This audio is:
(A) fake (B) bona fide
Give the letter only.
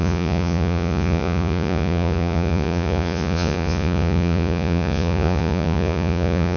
A